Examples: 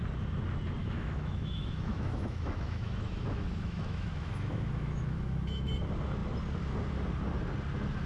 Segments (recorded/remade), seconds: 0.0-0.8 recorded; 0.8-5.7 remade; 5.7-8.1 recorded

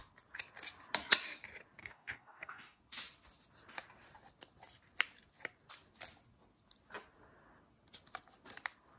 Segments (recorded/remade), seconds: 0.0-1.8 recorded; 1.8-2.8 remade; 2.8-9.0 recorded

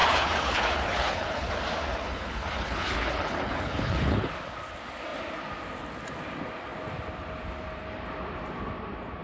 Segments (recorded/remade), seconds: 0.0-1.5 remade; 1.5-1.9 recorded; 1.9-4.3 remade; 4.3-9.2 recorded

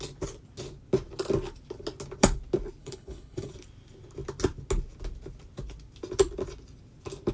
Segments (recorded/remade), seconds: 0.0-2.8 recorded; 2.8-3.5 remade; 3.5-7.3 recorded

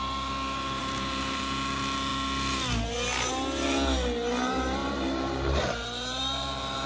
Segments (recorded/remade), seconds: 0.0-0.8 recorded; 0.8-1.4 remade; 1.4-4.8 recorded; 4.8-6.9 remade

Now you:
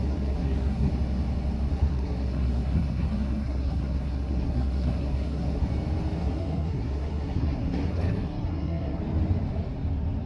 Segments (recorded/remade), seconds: 0.0-0.9 remade; 0.9-1.7 recorded; 1.7-5.7 remade; 5.7-6.2 recorded; 6.2-9.0 remade; 9.0-10.3 recorded

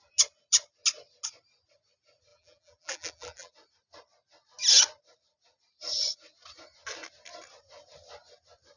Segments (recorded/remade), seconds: 0.0-2.3 recorded; 2.3-3.5 remade; 3.5-8.8 recorded

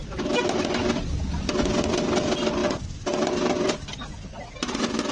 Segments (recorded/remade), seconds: 0.0-2.6 recorded; 2.6-4.4 remade; 4.4-5.1 recorded